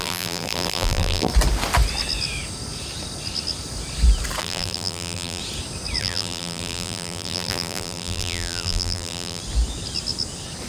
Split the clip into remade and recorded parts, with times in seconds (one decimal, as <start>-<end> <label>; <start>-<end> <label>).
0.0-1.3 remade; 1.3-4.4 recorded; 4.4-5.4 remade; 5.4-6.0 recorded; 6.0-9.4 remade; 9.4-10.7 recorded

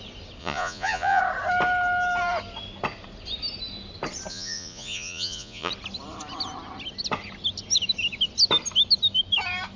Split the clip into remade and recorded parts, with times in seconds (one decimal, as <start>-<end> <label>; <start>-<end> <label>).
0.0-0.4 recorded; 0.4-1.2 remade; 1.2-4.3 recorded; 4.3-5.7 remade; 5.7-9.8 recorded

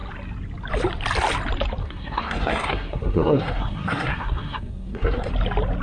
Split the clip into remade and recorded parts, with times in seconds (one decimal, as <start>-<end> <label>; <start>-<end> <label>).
0.0-1.8 recorded; 1.8-5.3 remade; 5.3-5.8 recorded